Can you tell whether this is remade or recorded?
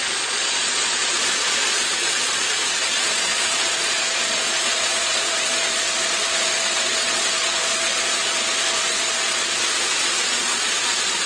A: remade